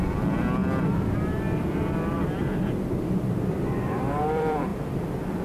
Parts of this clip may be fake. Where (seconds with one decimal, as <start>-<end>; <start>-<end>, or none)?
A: 0.0-0.6; 3.8-4.7